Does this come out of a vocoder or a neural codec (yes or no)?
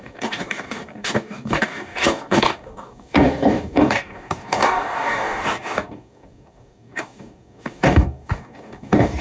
yes